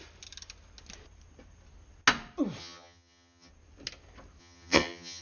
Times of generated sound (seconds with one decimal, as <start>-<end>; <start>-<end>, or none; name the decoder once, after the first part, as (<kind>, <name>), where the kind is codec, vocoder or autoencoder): 2.6-3.5 (vocoder, HiFi-GAN); 4.4-5.2